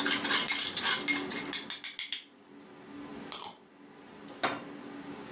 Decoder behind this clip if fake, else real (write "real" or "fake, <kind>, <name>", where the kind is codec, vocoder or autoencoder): real